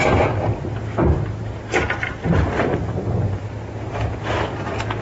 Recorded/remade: recorded